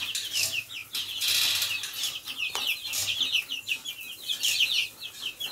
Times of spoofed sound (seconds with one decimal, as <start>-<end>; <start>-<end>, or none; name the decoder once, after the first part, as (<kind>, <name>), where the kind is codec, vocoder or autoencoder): 3.0-3.9 (vocoder, BigVGAN v2)